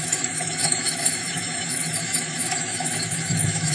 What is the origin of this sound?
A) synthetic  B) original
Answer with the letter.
A